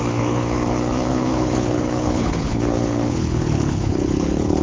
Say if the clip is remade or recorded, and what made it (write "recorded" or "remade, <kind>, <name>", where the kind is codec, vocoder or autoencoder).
remade, codec, HILCodec